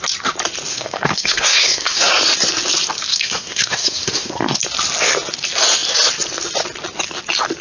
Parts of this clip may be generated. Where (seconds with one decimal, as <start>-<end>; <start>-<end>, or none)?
0.7-2.1; 3.1-4.6